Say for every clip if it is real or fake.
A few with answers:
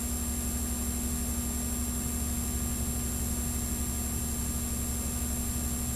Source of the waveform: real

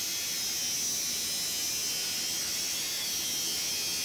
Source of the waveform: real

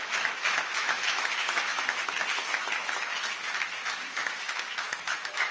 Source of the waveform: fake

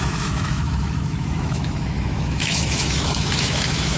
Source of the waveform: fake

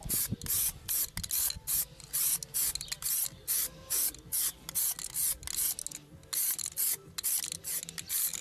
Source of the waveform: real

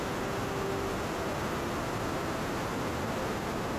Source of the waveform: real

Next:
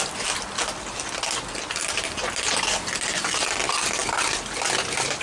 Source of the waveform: real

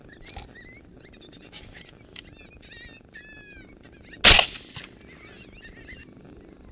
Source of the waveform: real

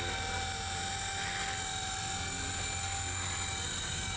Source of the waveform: real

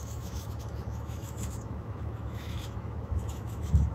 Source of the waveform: fake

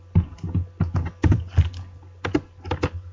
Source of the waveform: real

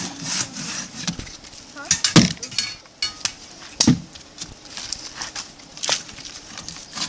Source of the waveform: real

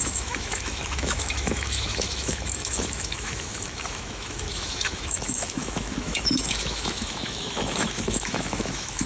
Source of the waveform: fake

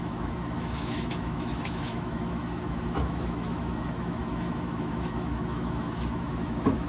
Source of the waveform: fake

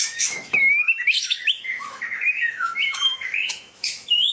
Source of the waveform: fake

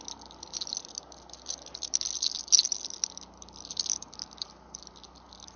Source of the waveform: real